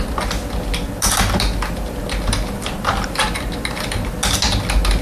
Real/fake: real